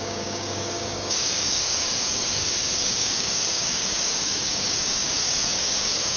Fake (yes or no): yes